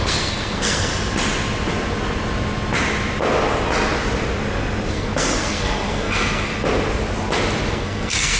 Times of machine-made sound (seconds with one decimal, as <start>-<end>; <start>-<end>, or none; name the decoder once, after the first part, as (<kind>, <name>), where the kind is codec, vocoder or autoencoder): 0.0-0.9 (codec, SNAC); 4.9-6.5; 7.7-8.4